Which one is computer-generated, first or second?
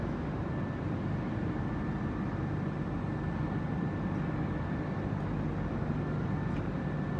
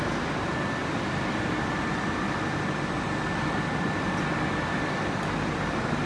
second